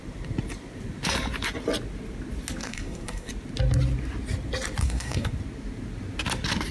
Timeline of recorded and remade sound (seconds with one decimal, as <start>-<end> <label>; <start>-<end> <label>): 0.0-2.6 recorded; 2.6-3.3 remade; 3.3-4.8 recorded; 4.8-5.3 remade; 5.3-6.7 recorded